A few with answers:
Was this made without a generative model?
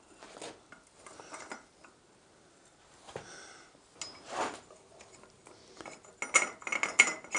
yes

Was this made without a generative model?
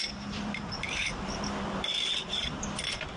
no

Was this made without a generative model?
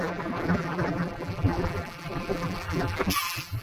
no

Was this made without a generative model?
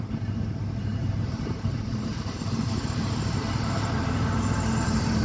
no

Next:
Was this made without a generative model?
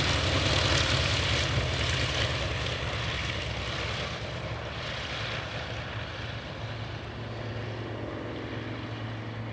yes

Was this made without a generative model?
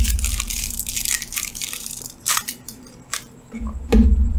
no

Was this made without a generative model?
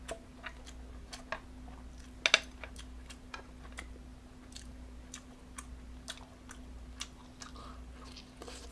yes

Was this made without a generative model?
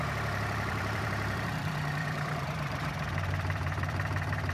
no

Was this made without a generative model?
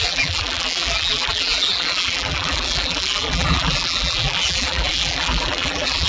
no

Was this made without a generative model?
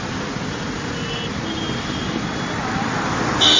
yes